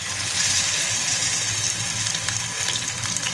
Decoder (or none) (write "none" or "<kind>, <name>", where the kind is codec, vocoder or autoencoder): none